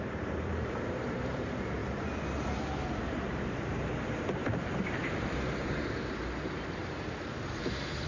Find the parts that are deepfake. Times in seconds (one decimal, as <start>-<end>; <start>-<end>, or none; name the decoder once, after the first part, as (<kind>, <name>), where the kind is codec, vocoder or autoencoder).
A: 0.0-8.1 (vocoder, BigVGAN v2)